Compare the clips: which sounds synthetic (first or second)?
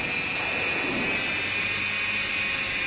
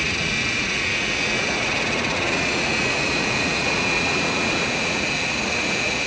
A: second